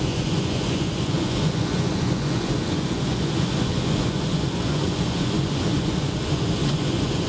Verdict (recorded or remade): remade